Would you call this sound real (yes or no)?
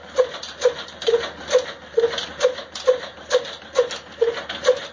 yes